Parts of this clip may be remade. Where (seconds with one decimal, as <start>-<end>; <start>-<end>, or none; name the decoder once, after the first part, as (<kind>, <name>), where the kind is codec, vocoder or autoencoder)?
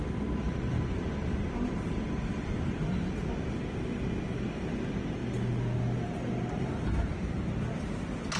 0.4-3.6 (vocoder, BigVGAN v2)